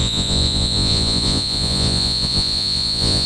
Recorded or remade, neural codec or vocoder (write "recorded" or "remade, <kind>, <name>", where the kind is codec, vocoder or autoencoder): remade, vocoder, Vocos